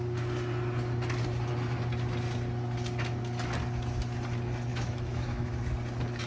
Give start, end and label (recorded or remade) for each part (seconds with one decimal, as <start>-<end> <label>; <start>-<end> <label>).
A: 0.0-4.7 recorded; 4.7-5.6 remade; 5.6-6.3 recorded